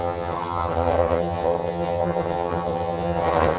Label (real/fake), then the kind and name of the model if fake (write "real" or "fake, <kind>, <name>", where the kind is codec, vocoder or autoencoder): fake, vocoder, HiFi-GAN